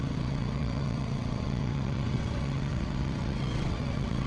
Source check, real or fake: fake